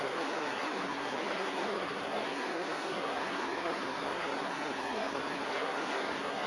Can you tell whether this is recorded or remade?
remade